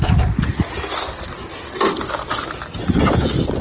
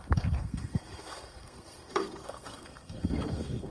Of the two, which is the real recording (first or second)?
first